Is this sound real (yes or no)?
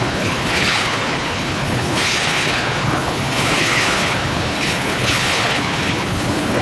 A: no